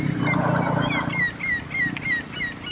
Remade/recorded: recorded